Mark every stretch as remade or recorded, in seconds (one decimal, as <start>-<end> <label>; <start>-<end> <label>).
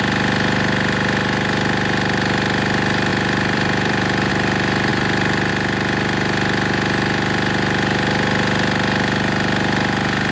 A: 0.0-3.1 recorded; 3.1-4.3 remade; 4.3-4.9 recorded; 4.9-5.5 remade; 5.5-10.3 recorded